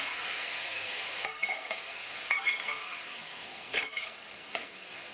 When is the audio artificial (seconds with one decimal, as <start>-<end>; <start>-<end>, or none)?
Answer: 0.0-5.1